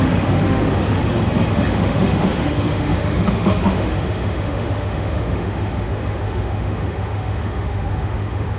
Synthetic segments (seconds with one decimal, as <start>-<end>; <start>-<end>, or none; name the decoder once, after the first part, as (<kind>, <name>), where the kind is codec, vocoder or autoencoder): 0.0-1.0 (autoencoder, DAC-VAE); 1.5-8.6